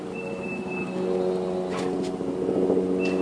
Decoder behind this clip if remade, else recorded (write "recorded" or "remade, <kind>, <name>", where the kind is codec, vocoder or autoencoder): recorded